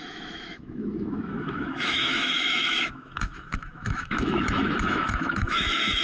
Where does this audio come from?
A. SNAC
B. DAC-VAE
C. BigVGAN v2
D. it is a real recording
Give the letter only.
B